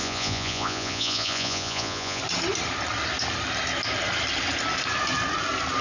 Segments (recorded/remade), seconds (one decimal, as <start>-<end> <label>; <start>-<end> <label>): 0.0-2.2 remade; 2.2-5.8 recorded